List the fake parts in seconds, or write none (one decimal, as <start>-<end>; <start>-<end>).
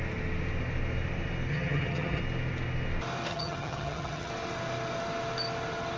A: 1.5-2.2; 3.3-4.3